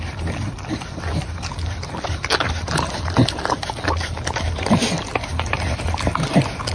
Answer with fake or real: real